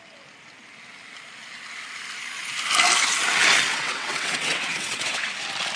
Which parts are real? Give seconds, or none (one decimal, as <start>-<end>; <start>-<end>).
0.0-3.7; 5.3-5.8